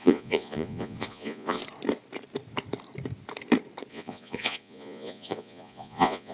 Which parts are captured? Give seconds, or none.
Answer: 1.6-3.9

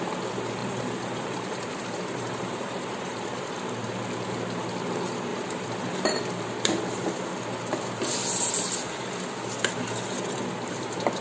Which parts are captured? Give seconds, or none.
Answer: 0.0-0.6; 3.5-5.3; 6.2-11.2

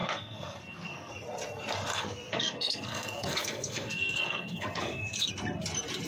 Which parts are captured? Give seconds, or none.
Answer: 1.1-1.9; 5.3-6.1

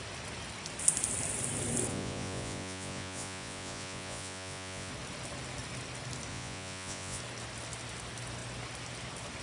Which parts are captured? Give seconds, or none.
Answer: 0.0-1.9; 4.9-6.3; 7.2-9.4

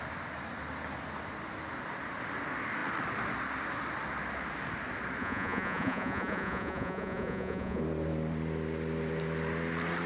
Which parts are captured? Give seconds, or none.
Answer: 0.0-5.2; 7.8-10.1

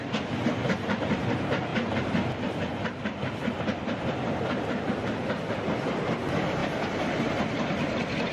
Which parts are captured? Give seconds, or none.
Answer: 0.0-1.7; 2.4-3.4; 4.8-6.6; 7.3-8.3

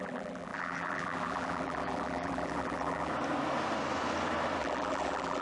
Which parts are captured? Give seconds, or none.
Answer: 3.1-4.6